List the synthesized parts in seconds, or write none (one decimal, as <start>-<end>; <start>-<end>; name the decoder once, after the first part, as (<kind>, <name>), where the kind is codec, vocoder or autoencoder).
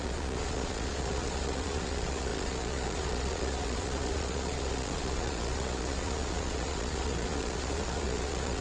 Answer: 0.0-8.6 (vocoder, Vocos)